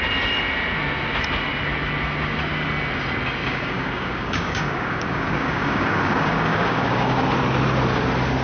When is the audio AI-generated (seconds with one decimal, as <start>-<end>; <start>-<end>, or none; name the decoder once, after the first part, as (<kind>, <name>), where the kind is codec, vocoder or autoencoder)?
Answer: 3.4-7.2 (codec, DAC)